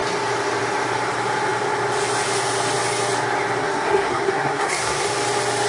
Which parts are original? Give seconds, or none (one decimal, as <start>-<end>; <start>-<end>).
0.0-3.6; 5.1-5.7

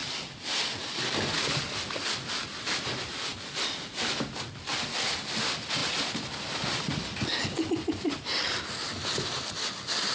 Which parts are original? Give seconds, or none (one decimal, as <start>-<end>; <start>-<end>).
0.0-10.1

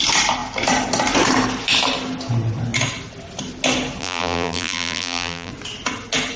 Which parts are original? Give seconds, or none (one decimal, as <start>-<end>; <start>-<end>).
0.0-4.0; 5.5-6.4